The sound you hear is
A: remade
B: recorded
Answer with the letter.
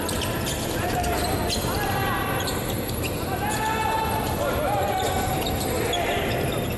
B